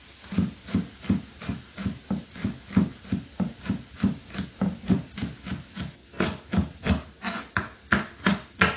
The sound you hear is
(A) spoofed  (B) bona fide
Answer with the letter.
B